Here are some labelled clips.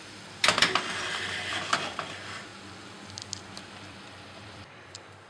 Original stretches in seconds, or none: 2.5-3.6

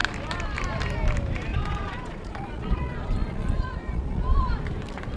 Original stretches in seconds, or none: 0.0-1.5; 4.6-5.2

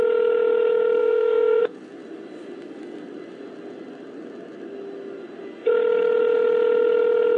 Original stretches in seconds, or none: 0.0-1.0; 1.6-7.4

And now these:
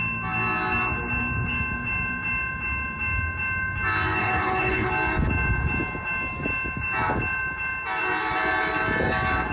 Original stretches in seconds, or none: 0.0-4.2; 4.9-9.5

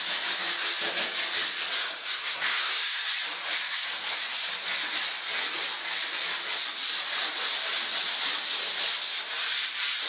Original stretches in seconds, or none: 0.0-2.1; 3.0-10.1

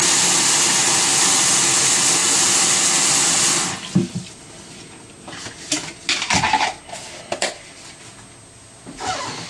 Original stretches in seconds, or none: 0.0-9.5

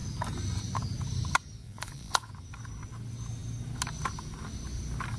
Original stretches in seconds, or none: 0.0-1.6; 2.3-5.2